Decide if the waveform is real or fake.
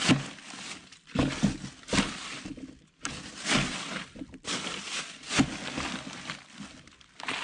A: real